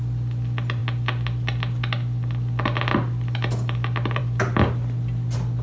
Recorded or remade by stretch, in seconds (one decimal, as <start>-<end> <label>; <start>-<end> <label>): 0.0-5.6 recorded